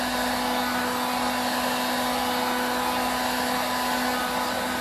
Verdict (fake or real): real